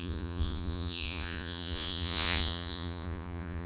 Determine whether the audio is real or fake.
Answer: fake